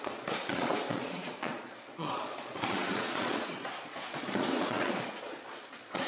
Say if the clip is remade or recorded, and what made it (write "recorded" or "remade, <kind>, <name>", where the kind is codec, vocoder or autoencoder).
remade, vocoder, Vocos